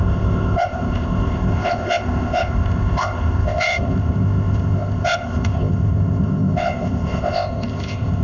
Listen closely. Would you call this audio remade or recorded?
remade